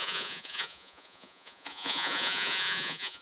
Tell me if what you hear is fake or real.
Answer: fake